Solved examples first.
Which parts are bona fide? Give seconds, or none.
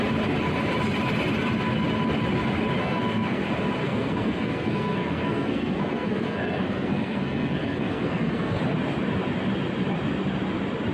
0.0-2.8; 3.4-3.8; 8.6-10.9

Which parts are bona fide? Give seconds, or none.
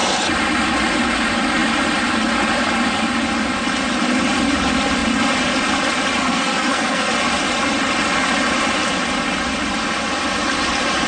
0.0-6.2; 7.1-11.1